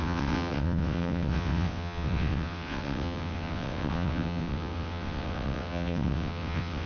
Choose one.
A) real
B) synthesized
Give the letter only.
B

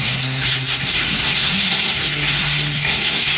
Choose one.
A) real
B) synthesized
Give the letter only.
B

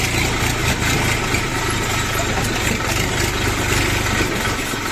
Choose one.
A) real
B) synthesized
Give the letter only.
A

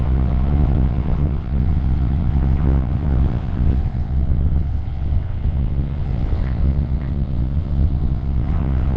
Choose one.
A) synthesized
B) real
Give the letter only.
A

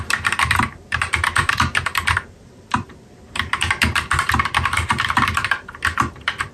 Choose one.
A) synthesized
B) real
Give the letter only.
A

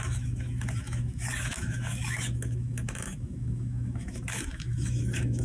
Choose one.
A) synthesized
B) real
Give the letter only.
A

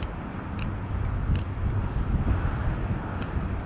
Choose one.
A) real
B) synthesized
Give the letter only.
A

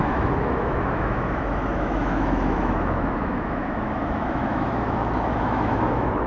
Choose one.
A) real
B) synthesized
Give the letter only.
B